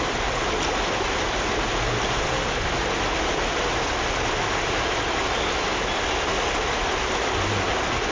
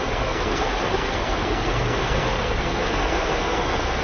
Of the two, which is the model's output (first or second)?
second